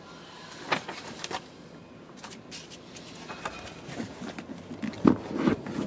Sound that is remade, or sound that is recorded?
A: recorded